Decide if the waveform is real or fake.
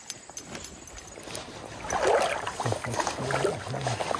real